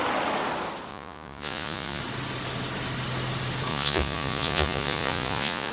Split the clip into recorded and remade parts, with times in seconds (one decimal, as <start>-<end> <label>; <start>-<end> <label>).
0.0-0.9 recorded; 0.9-2.0 remade; 2.0-3.7 recorded; 3.7-5.7 remade